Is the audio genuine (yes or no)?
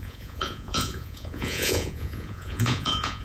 no